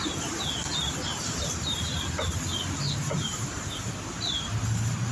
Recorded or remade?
recorded